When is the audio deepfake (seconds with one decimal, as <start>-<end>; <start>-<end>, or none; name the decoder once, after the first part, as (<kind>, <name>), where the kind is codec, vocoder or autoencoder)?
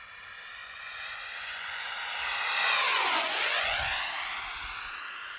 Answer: 0.6-1.9 (vocoder, Vocos); 2.9-4.0